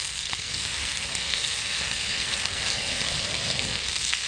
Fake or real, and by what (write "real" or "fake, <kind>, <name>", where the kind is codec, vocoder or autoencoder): fake, codec, SNAC